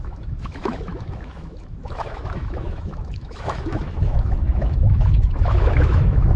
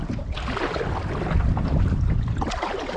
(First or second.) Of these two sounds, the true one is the second